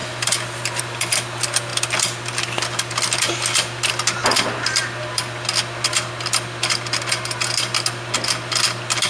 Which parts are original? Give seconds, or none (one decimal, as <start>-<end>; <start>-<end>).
0.0-9.1